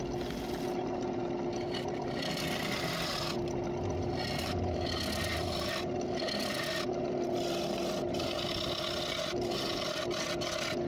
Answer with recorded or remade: recorded